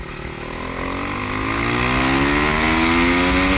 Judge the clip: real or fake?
real